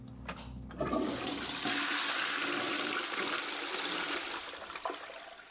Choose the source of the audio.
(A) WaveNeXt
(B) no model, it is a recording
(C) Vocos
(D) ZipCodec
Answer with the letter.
B